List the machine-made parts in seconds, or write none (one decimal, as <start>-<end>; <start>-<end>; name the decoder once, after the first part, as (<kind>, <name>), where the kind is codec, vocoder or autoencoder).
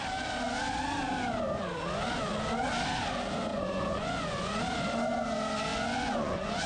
3.5-4.6 (vocoder, Vocos); 5.7-6.7